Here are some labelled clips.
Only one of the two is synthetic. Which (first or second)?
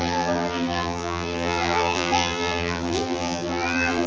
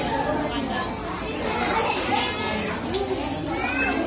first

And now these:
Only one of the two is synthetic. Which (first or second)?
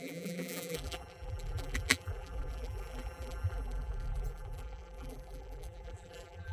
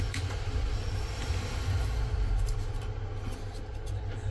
first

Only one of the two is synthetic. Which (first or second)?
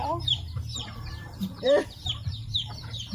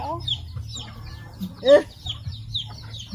first